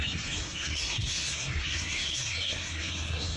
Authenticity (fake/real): fake